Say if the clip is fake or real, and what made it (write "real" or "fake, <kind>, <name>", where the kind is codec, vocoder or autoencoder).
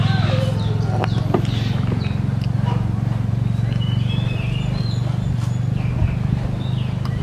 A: real